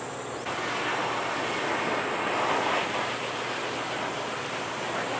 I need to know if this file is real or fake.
real